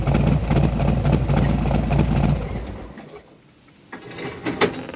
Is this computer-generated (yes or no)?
no